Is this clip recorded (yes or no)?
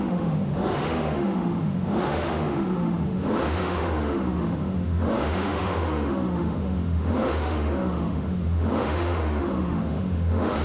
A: no